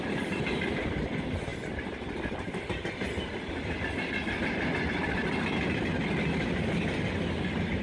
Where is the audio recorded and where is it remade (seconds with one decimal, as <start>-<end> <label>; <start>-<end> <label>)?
0.0-7.8 recorded